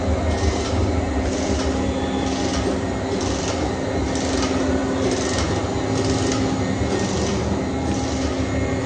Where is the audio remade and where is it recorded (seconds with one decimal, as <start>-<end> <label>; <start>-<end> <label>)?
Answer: 0.0-8.9 recorded